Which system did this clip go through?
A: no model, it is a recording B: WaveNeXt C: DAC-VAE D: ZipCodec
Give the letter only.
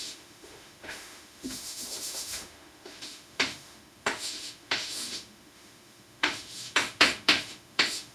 C